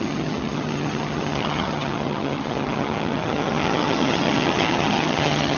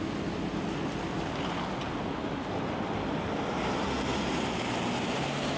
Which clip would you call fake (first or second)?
first